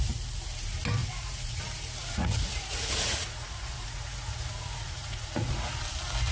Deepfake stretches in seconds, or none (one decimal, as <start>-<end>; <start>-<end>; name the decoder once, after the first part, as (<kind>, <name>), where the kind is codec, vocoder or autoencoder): 1.0-1.6 (vocoder, Vocos); 2.0-5.8